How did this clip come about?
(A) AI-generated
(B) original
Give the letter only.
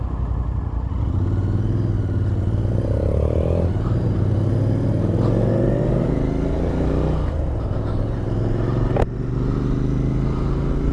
B